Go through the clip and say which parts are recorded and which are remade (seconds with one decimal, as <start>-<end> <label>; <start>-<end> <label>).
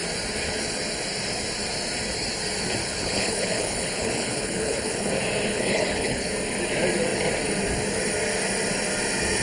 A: 0.0-2.8 recorded; 2.8-5.1 remade; 5.1-5.5 recorded; 5.5-6.3 remade; 6.3-9.4 recorded